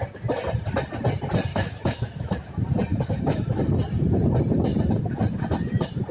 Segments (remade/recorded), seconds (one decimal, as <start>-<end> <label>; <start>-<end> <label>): 0.0-1.5 recorded; 1.5-2.5 remade; 2.5-2.9 recorded; 2.9-3.6 remade; 3.6-6.1 recorded